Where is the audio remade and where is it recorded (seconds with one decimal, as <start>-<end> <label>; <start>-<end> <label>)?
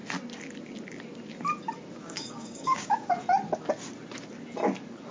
0.0-2.0 recorded; 2.0-3.1 remade; 3.1-5.1 recorded